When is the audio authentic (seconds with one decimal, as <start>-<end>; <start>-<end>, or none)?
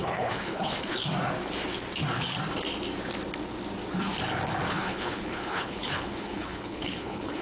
1.0-4.7